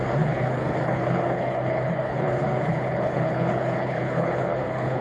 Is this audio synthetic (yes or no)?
yes